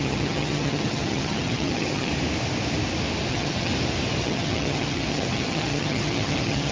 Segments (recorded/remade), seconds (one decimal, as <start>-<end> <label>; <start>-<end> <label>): 0.0-2.1 remade; 2.1-3.3 recorded; 3.3-3.7 remade; 3.7-4.2 recorded; 4.2-6.7 remade